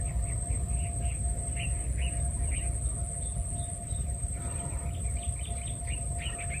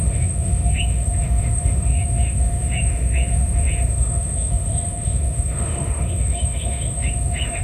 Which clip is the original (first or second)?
first